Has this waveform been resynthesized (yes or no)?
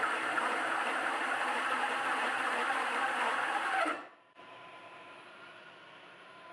yes